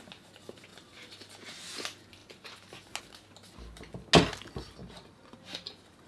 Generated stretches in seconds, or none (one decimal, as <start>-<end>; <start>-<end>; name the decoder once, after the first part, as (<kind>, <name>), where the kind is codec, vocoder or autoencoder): 4.8-6.1 (vocoder, BigVGAN v2)